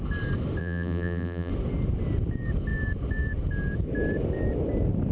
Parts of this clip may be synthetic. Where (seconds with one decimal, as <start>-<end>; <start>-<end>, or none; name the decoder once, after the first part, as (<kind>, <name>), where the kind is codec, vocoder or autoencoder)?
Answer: 0.6-1.5 (vocoder, BigVGAN v2)